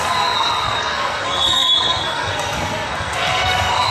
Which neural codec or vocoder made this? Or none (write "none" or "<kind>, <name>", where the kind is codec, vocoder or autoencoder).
codec, SNAC